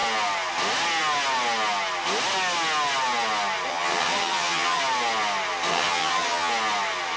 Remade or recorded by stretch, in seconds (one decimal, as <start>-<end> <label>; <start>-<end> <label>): 0.0-3.7 recorded; 3.7-4.8 remade; 4.8-5.7 recorded; 5.7-6.5 remade; 6.5-7.2 recorded